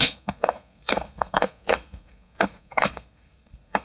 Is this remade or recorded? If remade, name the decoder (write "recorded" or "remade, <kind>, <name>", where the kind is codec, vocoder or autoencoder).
remade, codec, SNAC